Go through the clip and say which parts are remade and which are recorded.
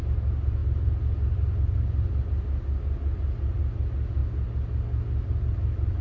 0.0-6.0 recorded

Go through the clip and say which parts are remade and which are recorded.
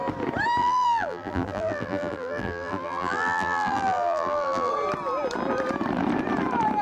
0.0-0.6 recorded; 0.6-4.7 remade; 4.7-6.8 recorded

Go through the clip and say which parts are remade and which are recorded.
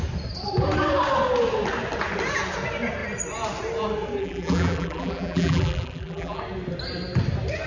0.0-4.2 recorded; 4.2-6.4 remade; 6.4-7.7 recorded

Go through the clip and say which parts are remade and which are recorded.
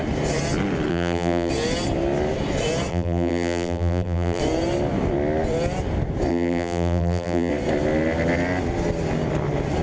0.0-0.9 recorded; 0.9-1.5 remade; 1.5-2.9 recorded; 2.9-4.4 remade; 4.4-6.3 recorded; 6.3-7.5 remade; 7.5-9.8 recorded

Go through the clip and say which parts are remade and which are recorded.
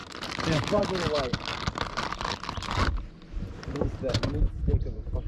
0.0-0.8 remade; 0.8-5.3 recorded